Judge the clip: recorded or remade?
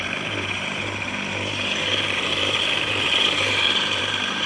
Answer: remade